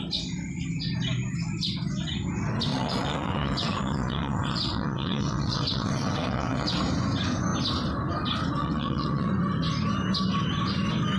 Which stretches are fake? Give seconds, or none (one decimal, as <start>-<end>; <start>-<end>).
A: 2.7-6.8; 8.6-9.3